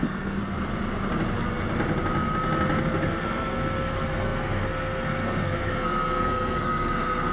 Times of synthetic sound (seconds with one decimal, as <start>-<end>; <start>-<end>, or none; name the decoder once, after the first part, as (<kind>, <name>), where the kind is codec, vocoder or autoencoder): 0.0-0.4 (codec, SNAC); 2.8-7.3